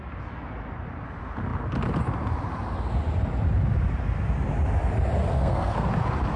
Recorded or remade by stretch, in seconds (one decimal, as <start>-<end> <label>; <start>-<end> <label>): 0.0-5.2 recorded; 5.2-5.9 remade; 5.9-6.4 recorded

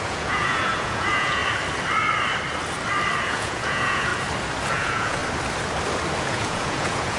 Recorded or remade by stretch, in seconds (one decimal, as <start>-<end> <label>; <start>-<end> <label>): 0.0-1.4 remade; 1.4-3.2 recorded; 3.2-4.1 remade; 4.1-4.7 recorded; 4.7-5.2 remade; 5.2-6.2 recorded; 6.2-7.2 remade

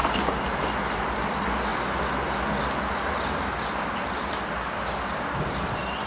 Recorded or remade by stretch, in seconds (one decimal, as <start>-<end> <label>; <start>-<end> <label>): 0.0-6.1 recorded

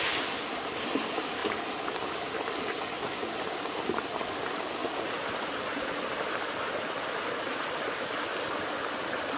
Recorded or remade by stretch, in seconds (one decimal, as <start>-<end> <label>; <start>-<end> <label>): 0.0-4.8 recorded; 4.8-6.0 remade; 6.0-9.4 recorded

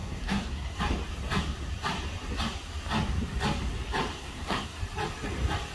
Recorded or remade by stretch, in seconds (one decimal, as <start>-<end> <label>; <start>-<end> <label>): 0.0-0.8 remade; 0.8-4.1 recorded; 4.1-4.8 remade; 4.8-5.7 recorded